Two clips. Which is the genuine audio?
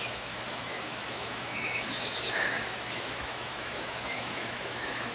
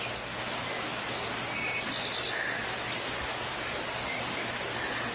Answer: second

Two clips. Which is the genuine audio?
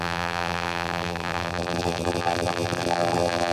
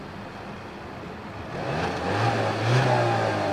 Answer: second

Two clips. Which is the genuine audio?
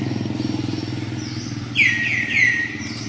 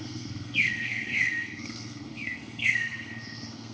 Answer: first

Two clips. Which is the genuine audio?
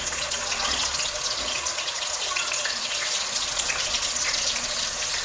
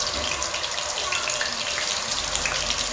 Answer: second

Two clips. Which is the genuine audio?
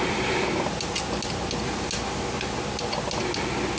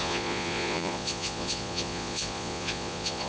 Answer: first